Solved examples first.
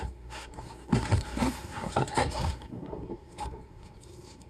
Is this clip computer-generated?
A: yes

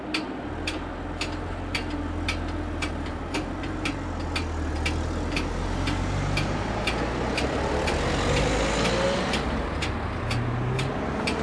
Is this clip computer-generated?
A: no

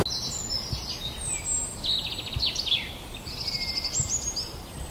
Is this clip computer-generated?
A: no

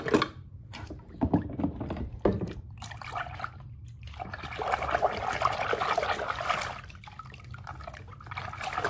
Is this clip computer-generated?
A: no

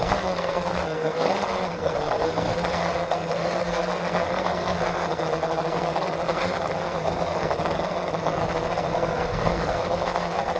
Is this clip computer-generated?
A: yes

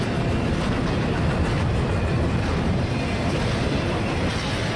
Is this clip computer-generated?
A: no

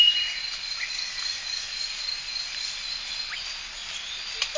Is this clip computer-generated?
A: no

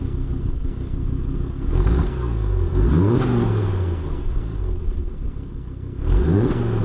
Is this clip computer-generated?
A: yes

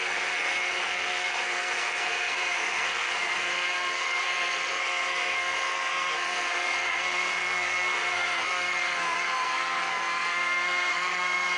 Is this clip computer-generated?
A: yes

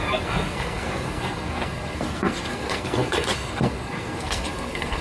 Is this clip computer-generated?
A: yes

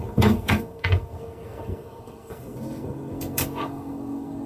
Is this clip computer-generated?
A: yes